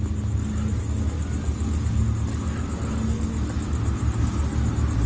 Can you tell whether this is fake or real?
real